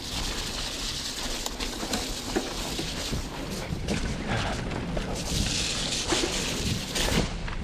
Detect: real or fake real